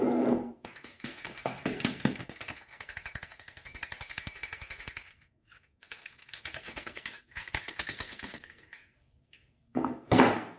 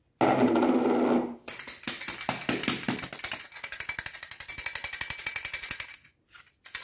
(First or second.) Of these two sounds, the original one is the second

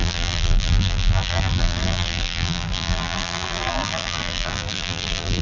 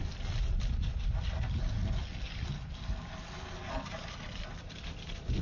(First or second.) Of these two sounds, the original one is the second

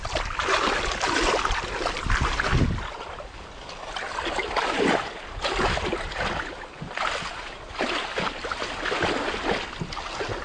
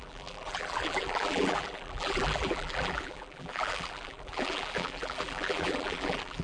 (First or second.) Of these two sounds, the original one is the first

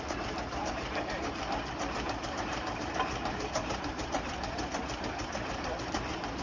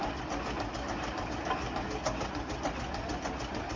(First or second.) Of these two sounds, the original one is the second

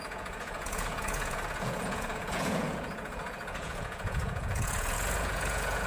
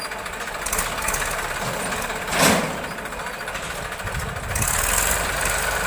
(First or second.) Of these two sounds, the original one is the second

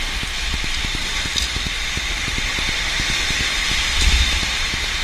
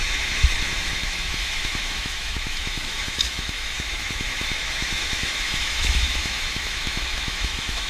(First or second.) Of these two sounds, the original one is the first